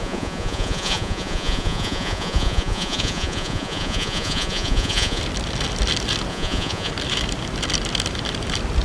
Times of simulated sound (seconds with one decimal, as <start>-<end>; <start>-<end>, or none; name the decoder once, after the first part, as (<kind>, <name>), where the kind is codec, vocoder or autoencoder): 0.0-5.2 (vocoder, Vocos); 6.3-6.9